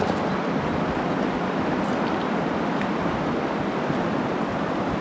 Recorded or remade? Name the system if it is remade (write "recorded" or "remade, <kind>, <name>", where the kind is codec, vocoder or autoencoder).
recorded